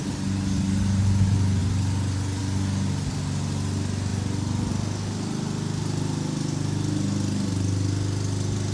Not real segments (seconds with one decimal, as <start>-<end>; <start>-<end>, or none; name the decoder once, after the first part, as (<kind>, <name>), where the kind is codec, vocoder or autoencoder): none